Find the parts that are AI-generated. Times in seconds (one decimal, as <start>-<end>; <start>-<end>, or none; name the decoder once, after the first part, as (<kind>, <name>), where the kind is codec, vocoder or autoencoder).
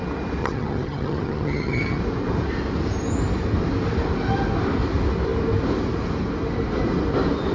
0.4-2.0 (vocoder, HiFi-GAN)